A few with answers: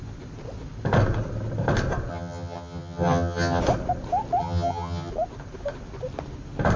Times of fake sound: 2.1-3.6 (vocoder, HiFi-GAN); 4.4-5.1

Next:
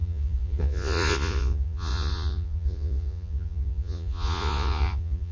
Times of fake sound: 0.0-5.3 (vocoder, Vocos)

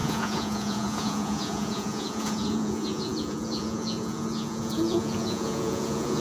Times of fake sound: 0.0-6.2 (vocoder, Vocos)

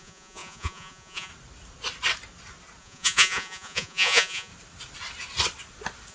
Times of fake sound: 0.0-1.3 (vocoder, Vocos); 2.8-4.5

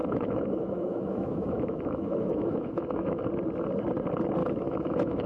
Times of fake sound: 0.0-3.2 (autoencoder, DAC-VAE); 4.4-5.3

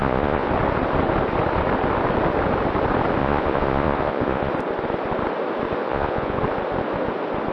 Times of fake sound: 0.0-0.5 (vocoder, Vocos); 3.2-4.5; 5.8-6.4